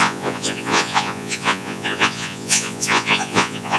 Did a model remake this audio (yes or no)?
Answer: yes